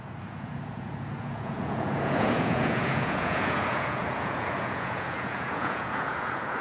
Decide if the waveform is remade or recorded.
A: remade